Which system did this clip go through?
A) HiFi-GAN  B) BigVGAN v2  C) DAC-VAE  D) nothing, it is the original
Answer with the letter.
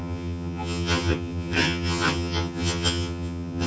A